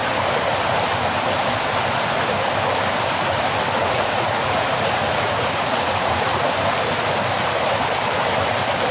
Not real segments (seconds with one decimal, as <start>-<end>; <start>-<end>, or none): 3.8-6.4